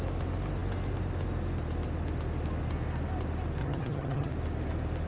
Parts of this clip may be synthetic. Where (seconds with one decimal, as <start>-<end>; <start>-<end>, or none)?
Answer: 3.6-4.3